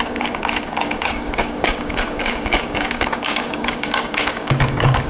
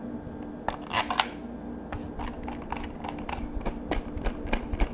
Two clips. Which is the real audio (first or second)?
second